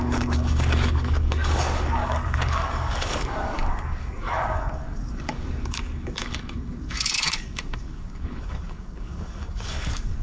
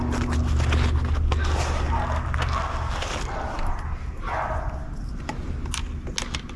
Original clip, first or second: second